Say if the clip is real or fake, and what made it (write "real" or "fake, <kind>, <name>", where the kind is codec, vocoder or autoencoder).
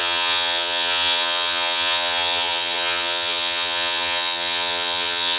fake, vocoder, HiFi-GAN